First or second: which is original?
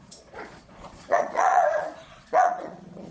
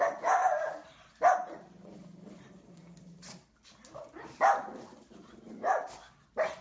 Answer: second